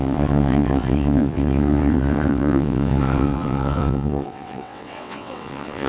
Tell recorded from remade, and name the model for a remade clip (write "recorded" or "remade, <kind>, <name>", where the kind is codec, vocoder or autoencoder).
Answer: remade, vocoder, WaveNeXt